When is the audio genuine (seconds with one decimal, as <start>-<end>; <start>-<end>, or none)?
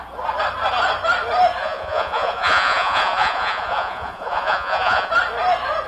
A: 0.0-1.6; 5.1-5.9